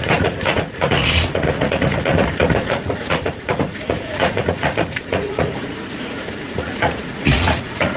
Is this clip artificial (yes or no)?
yes